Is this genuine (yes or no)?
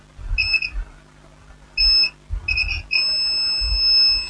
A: yes